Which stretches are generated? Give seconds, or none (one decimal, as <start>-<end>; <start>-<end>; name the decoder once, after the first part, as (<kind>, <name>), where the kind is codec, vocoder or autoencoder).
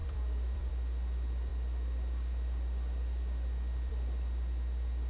0.0-0.7 (vocoder, BigVGAN v2)